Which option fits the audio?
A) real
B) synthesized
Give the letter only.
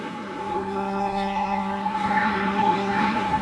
B